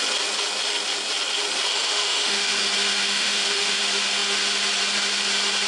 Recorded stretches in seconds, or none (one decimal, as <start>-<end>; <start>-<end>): 0.0-1.7; 2.6-3.0; 3.8-5.7

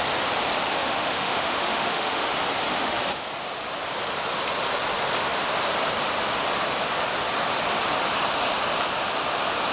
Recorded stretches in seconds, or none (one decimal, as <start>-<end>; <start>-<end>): 0.0-0.7; 2.3-2.7; 3.2-9.7

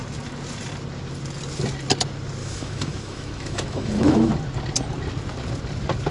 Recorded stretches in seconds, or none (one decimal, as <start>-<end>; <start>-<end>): 0.0-2.4; 4.3-6.1

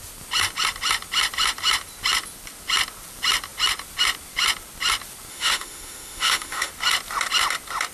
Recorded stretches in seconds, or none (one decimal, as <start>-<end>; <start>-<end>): 0.0-5.3; 6.7-7.9

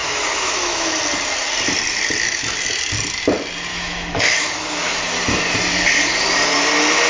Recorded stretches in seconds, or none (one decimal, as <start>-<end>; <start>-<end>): 1.0-3.7; 5.0-7.1